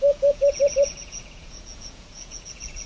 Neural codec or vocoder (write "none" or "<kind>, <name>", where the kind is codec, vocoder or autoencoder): vocoder, Vocos